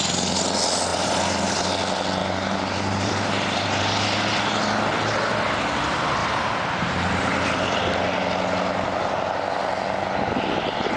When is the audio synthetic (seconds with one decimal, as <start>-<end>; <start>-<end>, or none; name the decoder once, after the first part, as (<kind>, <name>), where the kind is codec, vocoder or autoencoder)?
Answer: 0.9-1.7 (vocoder, BigVGAN v2); 2.2-4.4; 6.2-7.8